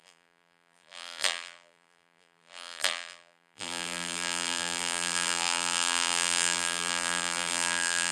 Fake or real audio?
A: fake